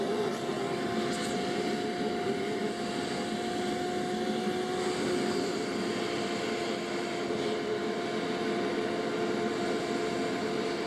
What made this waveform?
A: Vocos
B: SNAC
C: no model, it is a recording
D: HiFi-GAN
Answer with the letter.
C